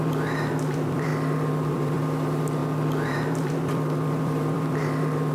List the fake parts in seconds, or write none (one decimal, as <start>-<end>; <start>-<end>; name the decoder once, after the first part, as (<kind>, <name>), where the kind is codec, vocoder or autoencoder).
0.0-2.6 (vocoder, BigVGAN v2); 3.1-5.3